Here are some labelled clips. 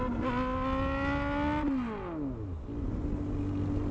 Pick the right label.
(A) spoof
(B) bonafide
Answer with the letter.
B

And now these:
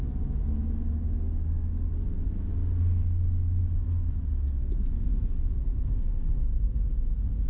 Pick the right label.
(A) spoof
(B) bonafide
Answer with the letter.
B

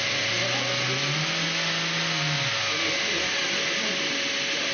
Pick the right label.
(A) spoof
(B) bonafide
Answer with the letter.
B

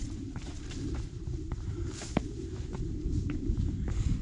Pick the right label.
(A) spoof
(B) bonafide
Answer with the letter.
A